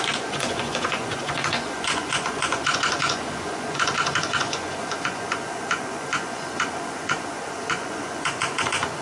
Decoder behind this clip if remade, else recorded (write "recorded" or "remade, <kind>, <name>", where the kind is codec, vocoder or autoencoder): remade, vocoder, Vocos